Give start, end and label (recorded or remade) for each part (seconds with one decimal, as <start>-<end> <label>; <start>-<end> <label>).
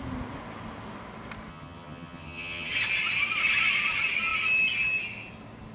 0.0-1.5 recorded; 1.5-2.7 remade; 2.7-5.7 recorded